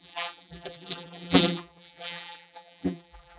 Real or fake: fake